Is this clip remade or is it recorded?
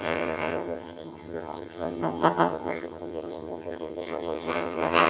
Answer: remade